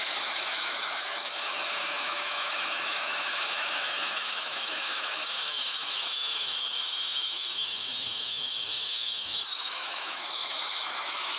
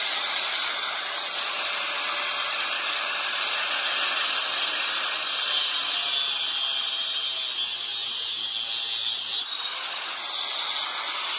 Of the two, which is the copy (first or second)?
first